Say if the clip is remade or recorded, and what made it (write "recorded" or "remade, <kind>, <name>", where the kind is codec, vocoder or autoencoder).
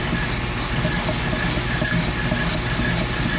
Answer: recorded